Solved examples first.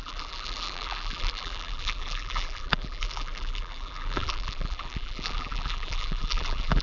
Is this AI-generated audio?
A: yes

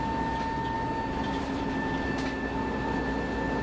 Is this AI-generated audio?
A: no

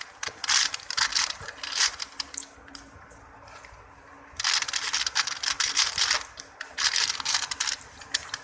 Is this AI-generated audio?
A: no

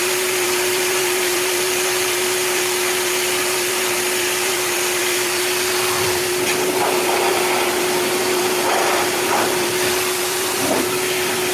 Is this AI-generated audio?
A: yes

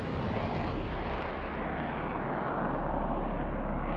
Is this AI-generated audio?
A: no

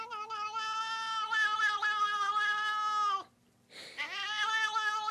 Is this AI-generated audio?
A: no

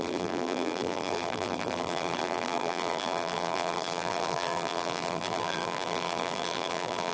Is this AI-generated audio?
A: yes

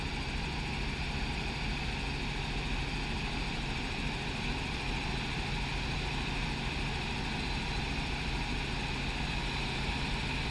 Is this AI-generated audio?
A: no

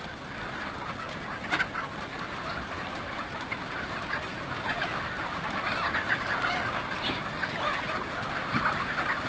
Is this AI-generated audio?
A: no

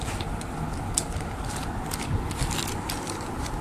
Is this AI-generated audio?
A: no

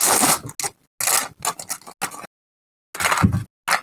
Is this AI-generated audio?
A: no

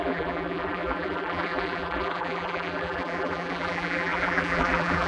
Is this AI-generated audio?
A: yes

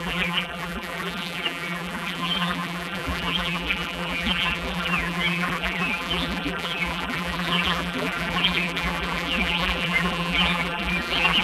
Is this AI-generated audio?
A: yes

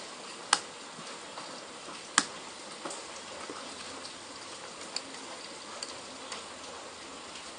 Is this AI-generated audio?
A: no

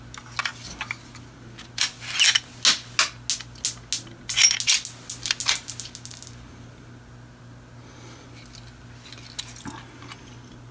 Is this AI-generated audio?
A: no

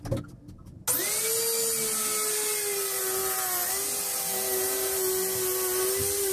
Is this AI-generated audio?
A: no